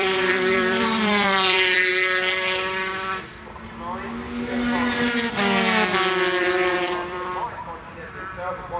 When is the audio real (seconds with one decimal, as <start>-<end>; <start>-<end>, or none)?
1.9-6.4